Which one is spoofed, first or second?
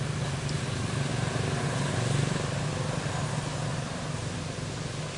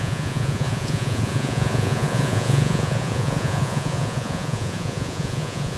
second